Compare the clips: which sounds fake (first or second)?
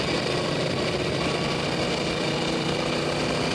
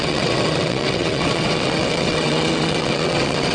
second